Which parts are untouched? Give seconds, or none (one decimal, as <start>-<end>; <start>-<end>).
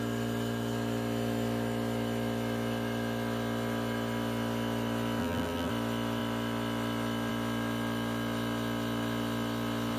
0.0-5.2; 5.7-10.0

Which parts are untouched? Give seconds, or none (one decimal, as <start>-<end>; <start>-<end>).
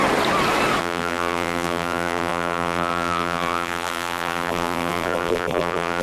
0.0-0.8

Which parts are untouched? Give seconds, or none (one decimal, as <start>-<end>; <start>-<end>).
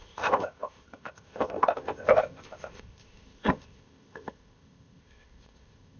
none